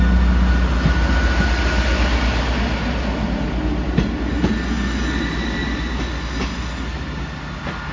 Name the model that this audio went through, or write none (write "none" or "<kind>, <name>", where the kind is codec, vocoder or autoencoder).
none